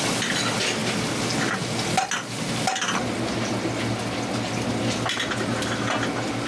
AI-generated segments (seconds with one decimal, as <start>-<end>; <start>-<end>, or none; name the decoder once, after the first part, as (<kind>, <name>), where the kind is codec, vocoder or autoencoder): none